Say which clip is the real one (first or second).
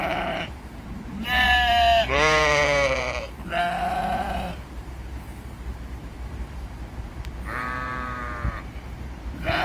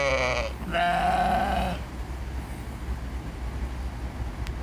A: second